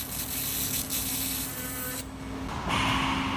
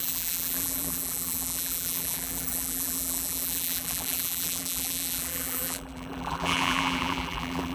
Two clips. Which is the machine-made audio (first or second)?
second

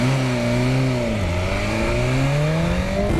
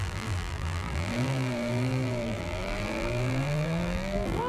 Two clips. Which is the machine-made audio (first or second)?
second